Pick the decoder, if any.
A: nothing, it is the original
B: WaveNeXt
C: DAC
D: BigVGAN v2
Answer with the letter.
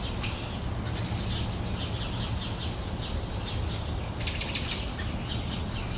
A